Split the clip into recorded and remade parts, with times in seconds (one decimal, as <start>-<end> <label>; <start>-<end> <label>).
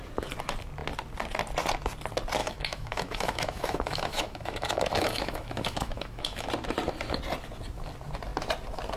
0.0-2.4 recorded; 2.4-6.5 remade; 6.5-9.0 recorded